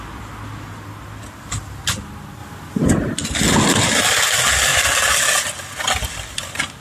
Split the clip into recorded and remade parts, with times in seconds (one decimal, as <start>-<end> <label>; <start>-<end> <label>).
0.0-6.8 recorded